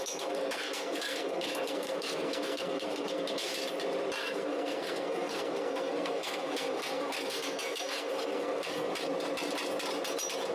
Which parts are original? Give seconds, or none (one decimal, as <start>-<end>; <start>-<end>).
3.5-4.2; 8.9-10.5